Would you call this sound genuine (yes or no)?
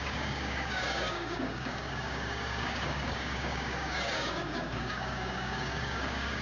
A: no